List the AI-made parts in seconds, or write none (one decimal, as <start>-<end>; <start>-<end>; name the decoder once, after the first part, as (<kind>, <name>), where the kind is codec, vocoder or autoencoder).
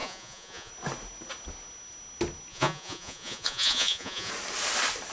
0.0-0.7 (vocoder, Vocos); 2.5-4.3